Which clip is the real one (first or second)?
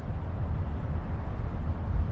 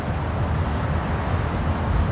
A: second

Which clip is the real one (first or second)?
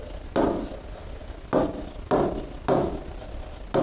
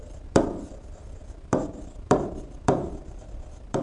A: first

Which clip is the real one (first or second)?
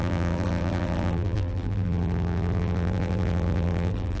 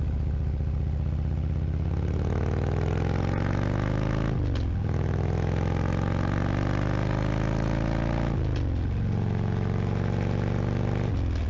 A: second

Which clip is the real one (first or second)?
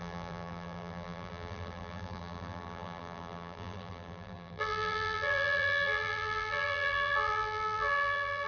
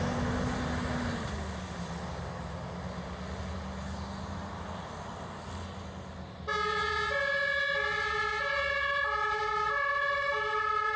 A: second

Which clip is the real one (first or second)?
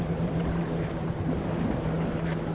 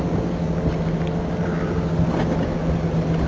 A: second